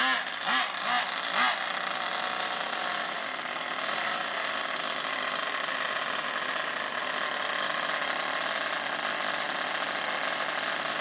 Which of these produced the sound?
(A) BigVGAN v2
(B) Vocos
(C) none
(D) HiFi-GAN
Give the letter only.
C